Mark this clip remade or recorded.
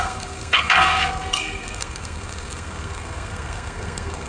remade